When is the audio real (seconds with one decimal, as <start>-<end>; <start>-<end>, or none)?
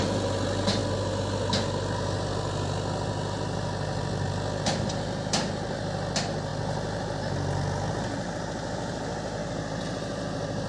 0.0-10.7